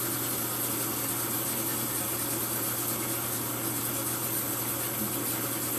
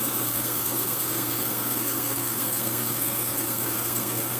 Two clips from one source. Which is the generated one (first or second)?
second